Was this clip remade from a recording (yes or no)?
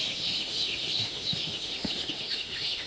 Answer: yes